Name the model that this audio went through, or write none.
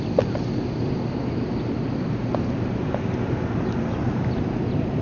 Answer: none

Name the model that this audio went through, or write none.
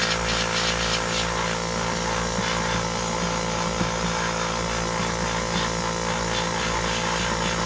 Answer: none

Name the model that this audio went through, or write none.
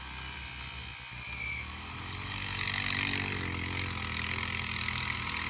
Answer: none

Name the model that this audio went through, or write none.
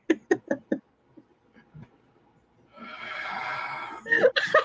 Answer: none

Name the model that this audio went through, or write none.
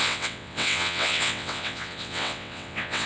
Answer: vocoder, WaveNeXt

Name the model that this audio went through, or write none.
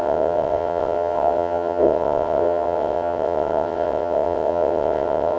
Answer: vocoder, WaveNeXt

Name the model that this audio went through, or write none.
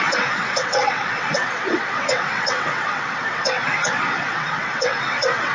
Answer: vocoder, WaveNeXt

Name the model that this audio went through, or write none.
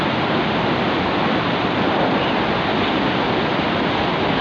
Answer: none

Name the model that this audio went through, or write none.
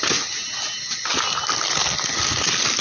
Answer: none